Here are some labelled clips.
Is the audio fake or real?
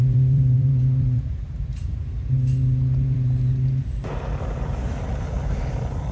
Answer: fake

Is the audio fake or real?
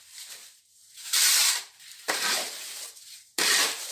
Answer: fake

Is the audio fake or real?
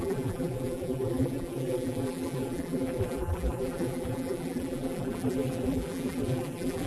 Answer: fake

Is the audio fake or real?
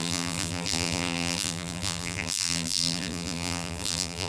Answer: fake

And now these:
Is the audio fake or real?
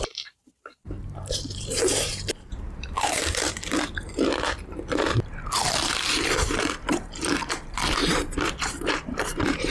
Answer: fake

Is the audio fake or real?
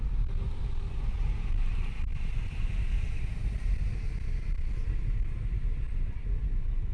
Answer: fake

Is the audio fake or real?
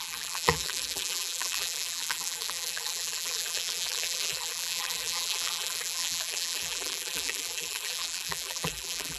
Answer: fake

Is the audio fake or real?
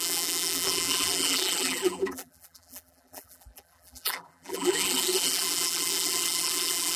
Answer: fake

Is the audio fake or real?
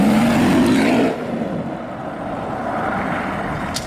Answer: real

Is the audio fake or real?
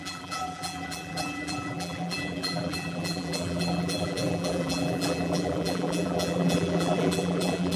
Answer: fake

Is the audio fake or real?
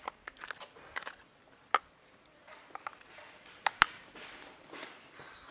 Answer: real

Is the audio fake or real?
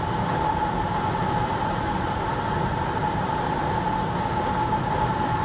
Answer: real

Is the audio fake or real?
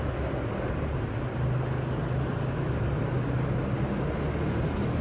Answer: real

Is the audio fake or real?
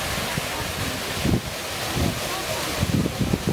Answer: real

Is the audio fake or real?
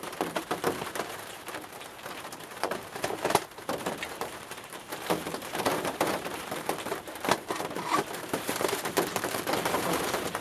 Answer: fake